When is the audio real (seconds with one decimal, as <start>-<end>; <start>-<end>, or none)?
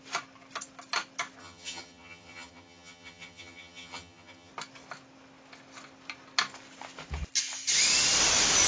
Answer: 0.0-1.4; 4.5-8.7